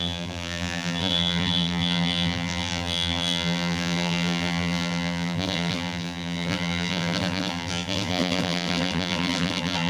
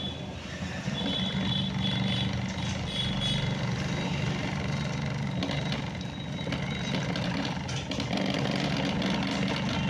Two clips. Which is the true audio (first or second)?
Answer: second